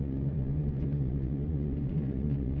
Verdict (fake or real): fake